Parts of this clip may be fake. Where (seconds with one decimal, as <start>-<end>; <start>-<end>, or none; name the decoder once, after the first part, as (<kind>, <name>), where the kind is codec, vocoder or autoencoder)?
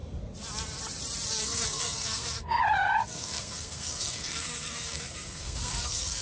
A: 1.4-2.6 (codec, SNAC); 3.0-6.2